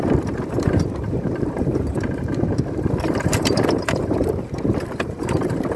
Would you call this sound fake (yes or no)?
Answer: yes